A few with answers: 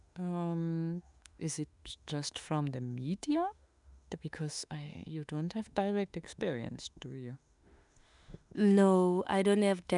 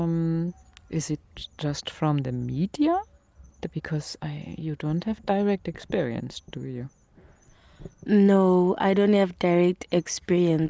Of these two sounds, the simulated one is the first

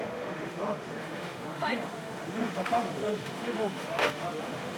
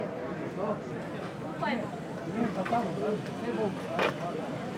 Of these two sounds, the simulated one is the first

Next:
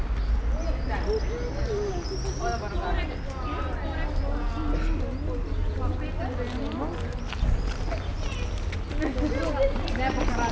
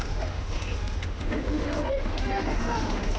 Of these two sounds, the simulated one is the second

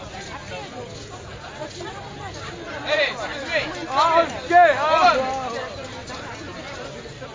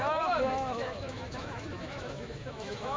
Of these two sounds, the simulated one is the second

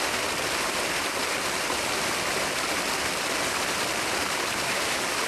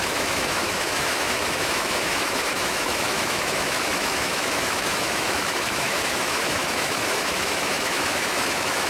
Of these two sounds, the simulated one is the second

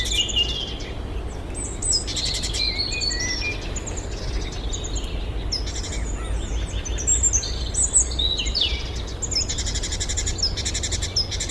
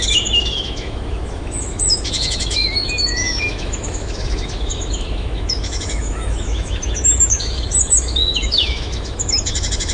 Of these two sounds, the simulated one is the second